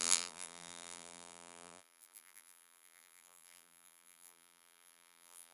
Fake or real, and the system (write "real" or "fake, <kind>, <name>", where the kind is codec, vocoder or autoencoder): fake, vocoder, BigVGAN v2